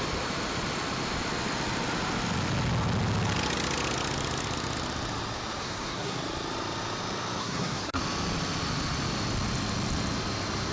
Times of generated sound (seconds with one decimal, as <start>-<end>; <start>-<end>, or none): 5.6-6.2; 7.4-8.0